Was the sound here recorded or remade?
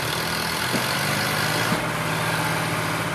recorded